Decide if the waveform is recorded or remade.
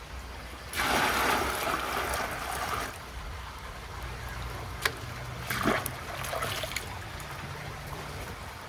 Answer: recorded